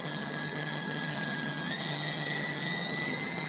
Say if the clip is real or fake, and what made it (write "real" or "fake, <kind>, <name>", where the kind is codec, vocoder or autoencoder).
fake, vocoder, HiFi-GAN